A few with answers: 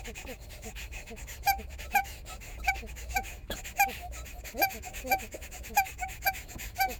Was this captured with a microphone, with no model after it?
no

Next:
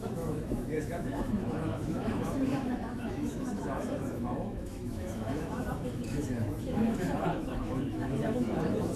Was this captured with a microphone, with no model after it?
no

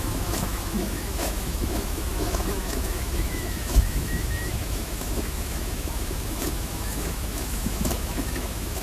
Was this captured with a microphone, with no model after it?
no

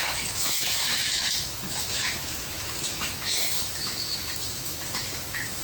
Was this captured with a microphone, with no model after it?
no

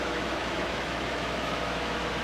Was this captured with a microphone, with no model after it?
no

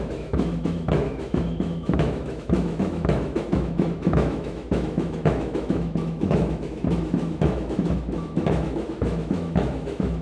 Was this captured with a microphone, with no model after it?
no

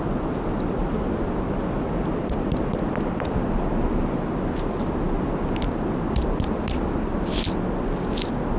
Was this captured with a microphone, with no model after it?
yes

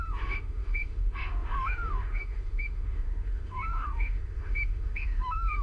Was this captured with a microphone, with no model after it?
no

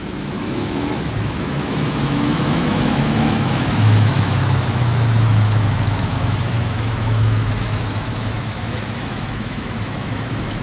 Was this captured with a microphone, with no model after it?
no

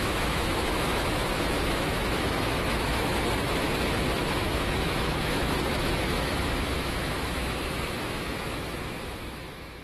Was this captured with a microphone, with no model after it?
no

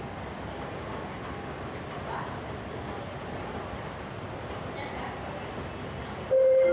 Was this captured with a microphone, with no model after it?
yes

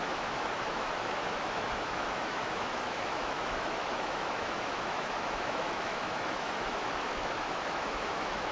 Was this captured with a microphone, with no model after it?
no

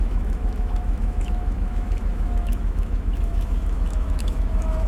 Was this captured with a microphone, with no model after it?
no